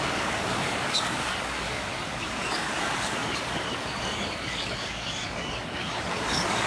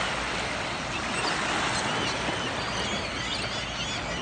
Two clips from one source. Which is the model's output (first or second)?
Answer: first